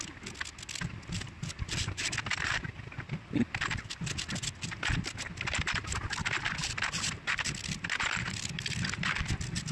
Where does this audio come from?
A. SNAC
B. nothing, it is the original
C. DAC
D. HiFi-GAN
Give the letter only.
B